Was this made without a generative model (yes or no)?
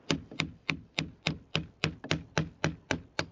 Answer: yes